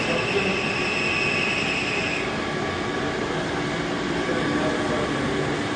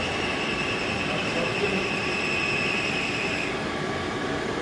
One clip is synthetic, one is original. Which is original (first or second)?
first